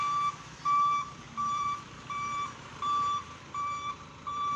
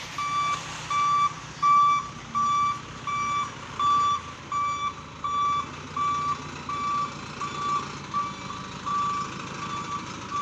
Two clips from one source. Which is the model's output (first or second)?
first